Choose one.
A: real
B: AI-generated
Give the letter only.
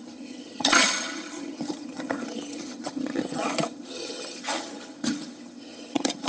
B